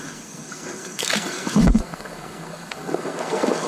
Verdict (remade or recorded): remade